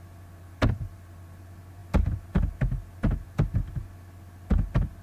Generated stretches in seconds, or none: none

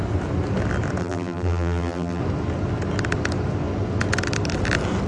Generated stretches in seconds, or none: 1.0-2.2 (vocoder, BigVGAN v2)

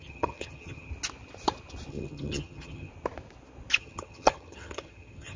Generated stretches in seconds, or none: 0.0-0.9 (vocoder, HiFi-GAN); 1.9-2.9; 3.8-5.4